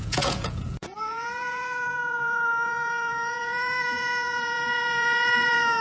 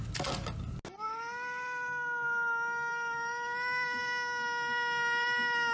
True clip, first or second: second